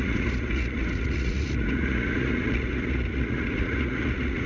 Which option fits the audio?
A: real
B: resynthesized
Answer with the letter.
B